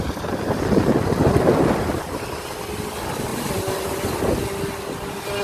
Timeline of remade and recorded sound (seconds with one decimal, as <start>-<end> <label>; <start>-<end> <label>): 0.0-5.4 recorded